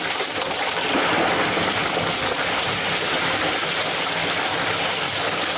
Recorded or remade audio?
recorded